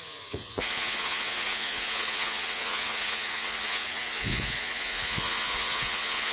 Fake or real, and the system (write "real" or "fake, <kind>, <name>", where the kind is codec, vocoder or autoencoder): fake, vocoder, Vocos